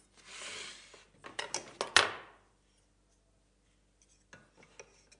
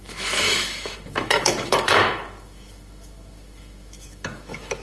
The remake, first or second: second